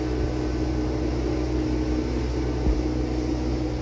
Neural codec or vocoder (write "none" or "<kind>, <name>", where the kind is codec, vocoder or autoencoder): none